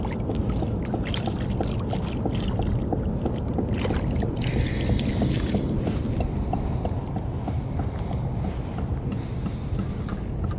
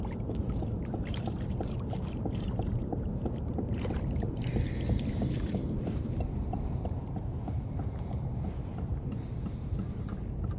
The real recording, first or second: first